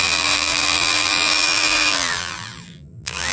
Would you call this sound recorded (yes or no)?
no